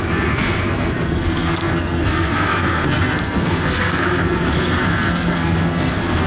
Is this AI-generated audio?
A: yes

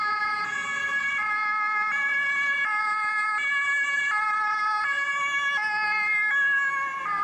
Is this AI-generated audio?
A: no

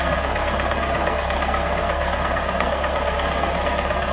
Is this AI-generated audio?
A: yes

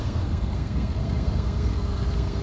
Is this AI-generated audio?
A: yes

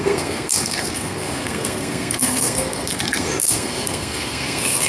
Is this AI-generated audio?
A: yes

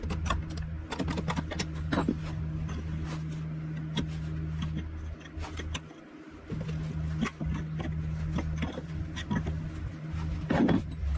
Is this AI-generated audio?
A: no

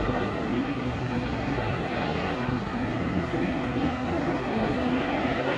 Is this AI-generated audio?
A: yes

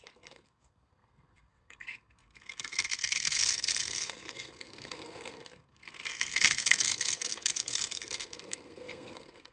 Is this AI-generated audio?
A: yes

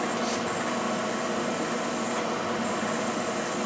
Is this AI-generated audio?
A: no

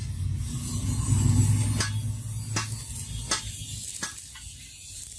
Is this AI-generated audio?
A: no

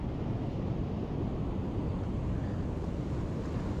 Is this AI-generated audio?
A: no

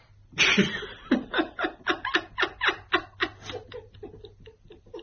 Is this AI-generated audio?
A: no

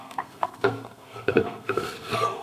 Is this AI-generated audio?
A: yes